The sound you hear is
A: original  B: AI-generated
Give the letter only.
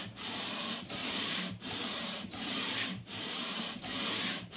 B